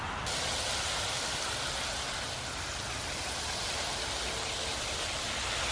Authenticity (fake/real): real